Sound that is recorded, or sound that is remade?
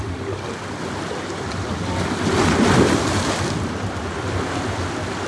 recorded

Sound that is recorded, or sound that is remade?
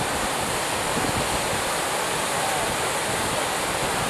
recorded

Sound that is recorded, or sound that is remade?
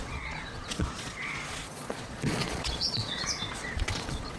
remade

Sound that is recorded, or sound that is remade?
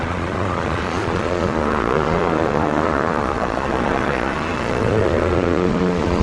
remade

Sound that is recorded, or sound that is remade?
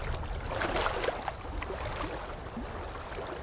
recorded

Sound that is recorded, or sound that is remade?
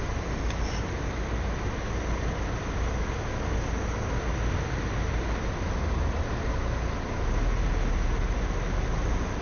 recorded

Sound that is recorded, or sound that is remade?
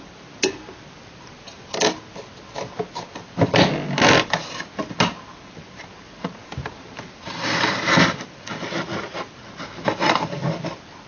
recorded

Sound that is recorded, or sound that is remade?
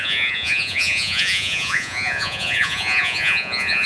remade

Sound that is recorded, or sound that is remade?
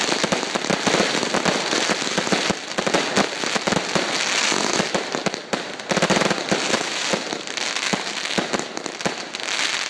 recorded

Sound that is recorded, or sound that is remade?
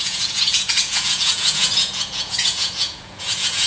remade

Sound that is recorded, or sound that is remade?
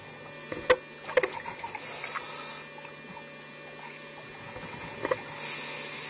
recorded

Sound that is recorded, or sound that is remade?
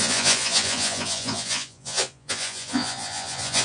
remade